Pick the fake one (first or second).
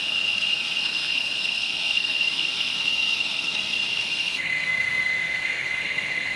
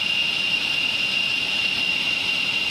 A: first